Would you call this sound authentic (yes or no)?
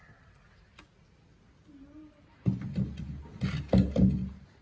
yes